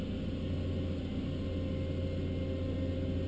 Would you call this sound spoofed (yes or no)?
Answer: no